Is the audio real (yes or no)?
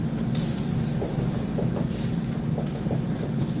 yes